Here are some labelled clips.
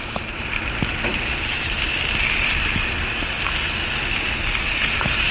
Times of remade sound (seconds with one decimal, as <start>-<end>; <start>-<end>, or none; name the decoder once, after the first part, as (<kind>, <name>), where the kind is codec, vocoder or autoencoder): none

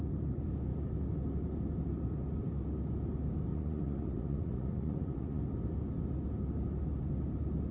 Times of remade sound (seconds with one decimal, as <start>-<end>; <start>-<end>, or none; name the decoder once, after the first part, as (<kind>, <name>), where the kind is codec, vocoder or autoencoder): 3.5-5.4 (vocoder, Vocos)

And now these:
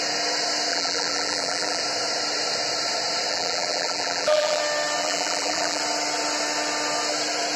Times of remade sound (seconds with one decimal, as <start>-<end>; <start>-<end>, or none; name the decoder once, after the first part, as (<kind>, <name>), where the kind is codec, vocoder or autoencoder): 0.7-1.8 (vocoder, BigVGAN v2); 3.3-4.6; 5.0-5.8

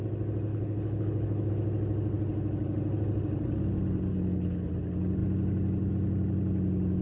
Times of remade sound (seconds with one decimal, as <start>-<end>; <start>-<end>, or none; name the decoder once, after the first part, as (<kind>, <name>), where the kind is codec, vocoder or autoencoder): 0.5-1.5 (codec, HILCodec); 4.1-4.7

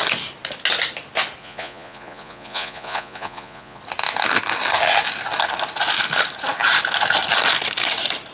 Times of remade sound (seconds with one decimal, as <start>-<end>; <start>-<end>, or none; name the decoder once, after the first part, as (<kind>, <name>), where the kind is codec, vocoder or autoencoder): 1.4-3.8 (vocoder, Vocos)

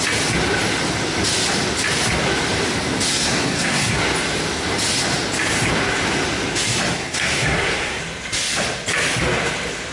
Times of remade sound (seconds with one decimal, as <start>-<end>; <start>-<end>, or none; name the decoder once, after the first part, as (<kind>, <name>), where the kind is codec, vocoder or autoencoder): 3.1-4.0 (codec, SNAC); 7.0-8.0

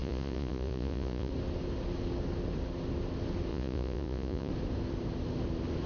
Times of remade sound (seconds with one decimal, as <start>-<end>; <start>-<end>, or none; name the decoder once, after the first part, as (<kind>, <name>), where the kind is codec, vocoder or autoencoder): 0.0-1.3 (vocoder, Vocos); 3.5-4.5

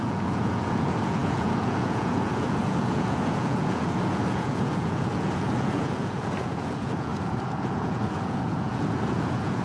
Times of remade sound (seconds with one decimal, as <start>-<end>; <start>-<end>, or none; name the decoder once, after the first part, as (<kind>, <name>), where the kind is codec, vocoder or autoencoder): 0.0-9.6 (vocoder, Vocos)